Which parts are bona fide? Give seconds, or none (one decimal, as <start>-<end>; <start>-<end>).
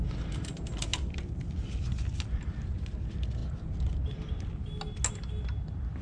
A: 0.0-6.0